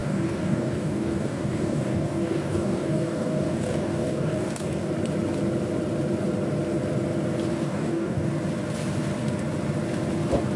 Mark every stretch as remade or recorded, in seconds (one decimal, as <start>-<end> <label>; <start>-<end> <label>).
0.0-4.9 remade; 4.9-7.5 recorded; 7.5-8.3 remade; 8.3-10.6 recorded